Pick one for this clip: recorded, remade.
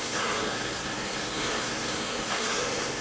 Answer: remade